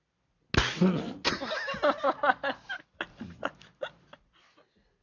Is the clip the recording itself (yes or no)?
yes